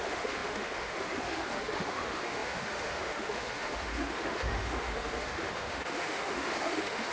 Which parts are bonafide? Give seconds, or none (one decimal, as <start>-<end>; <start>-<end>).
none